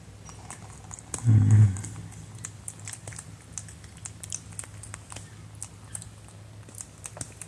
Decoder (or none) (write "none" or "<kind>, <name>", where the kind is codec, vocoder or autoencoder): none